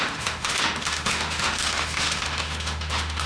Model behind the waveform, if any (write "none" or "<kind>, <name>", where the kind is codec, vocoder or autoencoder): autoencoder, DAC-VAE